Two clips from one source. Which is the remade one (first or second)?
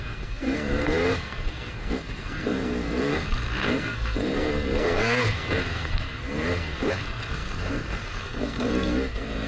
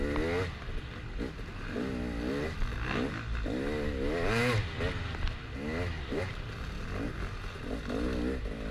first